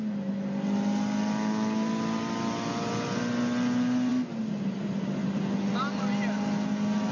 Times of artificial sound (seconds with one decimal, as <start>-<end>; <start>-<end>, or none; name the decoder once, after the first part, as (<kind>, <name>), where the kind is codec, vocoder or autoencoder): none

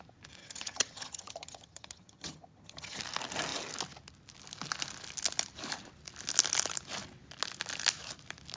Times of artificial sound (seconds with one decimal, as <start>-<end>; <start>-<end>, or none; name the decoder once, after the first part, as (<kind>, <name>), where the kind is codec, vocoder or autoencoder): 0.4-3.0 (vocoder, HiFi-GAN)